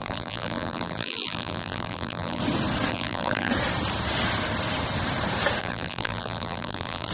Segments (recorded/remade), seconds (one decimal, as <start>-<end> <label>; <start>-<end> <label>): 0.0-2.4 remade; 2.4-2.9 recorded; 2.9-3.5 remade; 3.5-5.6 recorded; 5.6-7.1 remade